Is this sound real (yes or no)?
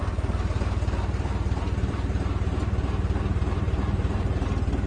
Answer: no